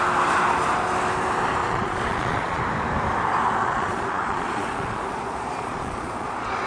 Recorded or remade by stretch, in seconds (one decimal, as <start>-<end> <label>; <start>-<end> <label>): 0.0-1.6 recorded; 1.6-2.6 remade; 2.6-3.6 recorded; 3.6-6.7 remade